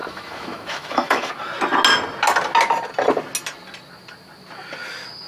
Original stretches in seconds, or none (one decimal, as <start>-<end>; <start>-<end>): 1.3-5.3